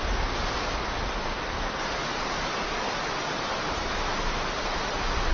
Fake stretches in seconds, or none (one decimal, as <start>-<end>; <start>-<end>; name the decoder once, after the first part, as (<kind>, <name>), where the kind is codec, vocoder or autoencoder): 2.1-5.3 (vocoder, BigVGAN v2)

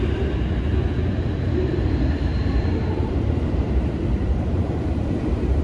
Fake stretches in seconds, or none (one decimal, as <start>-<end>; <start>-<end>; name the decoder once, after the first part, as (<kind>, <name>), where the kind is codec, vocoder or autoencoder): 2.3-5.6 (vocoder, BigVGAN v2)

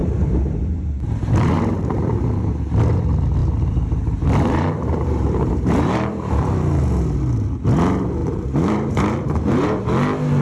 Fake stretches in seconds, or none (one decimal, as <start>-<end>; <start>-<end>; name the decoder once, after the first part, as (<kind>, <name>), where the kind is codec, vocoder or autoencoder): 0.0-3.0 (vocoder, BigVGAN v2); 3.4-6.8; 8.2-9.8